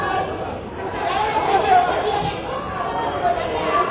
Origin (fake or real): real